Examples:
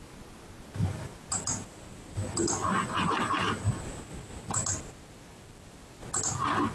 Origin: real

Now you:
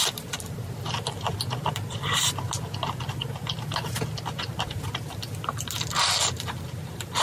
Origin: real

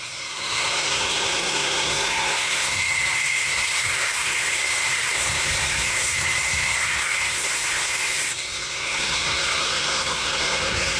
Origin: fake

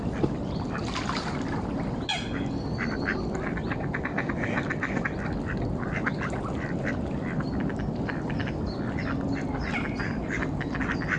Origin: real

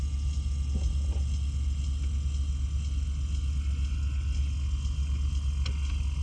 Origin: real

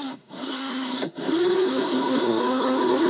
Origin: fake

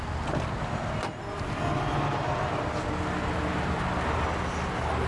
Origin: real